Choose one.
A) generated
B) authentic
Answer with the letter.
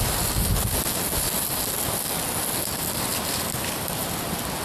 B